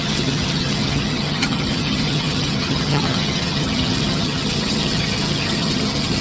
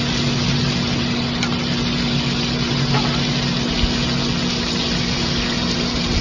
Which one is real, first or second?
second